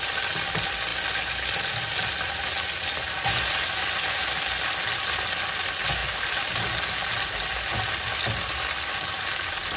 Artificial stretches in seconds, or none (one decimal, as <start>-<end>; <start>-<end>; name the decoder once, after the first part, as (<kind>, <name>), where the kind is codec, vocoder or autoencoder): 6.0-6.5 (vocoder, BigVGAN v2)